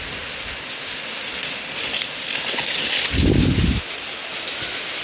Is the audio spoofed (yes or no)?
no